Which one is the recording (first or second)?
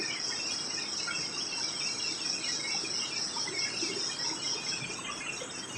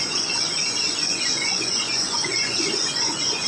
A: first